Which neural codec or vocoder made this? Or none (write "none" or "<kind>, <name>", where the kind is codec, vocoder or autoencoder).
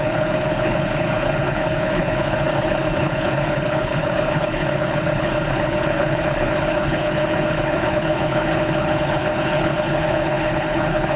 codec, HILCodec